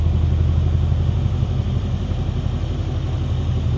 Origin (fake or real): real